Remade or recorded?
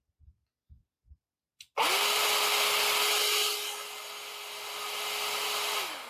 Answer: recorded